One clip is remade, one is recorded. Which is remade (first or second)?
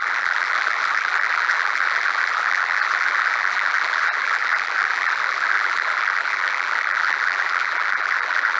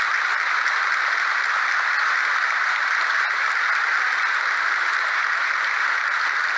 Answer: first